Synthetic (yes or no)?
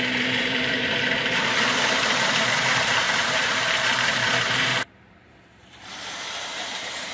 yes